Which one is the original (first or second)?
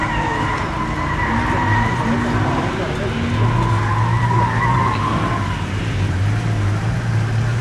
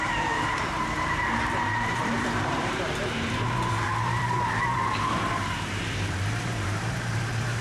first